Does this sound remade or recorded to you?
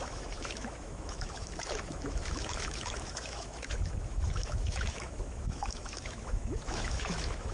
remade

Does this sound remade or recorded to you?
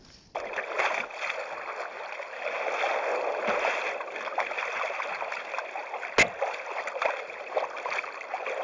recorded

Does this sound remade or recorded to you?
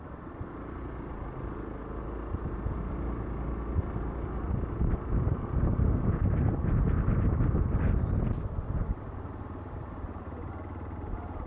recorded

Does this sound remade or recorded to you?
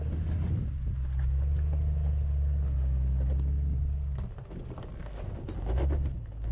recorded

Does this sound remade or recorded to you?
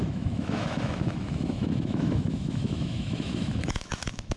remade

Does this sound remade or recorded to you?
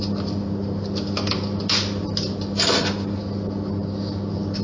recorded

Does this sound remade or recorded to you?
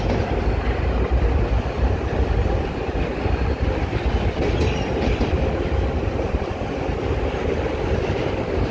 recorded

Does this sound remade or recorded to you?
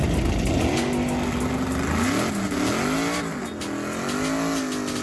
recorded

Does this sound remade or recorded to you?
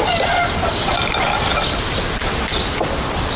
recorded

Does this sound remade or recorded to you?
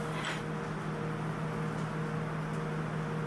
recorded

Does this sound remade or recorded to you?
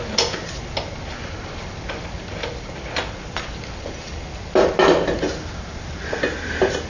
recorded